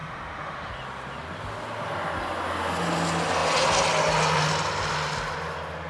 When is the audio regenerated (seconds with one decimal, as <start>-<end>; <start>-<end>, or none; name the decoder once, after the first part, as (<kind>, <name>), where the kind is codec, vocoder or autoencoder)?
0.0-0.7 (autoencoder, DAC-VAE)